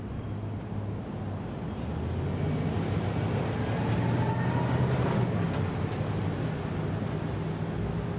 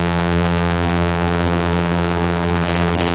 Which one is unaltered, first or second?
first